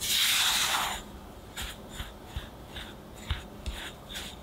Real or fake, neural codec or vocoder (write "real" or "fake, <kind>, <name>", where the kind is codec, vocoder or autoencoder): real